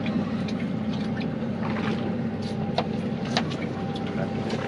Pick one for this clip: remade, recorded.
recorded